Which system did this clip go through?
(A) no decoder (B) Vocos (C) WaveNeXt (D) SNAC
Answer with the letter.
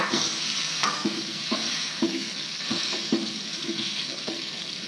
D